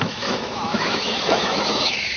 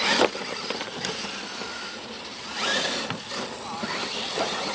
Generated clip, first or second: first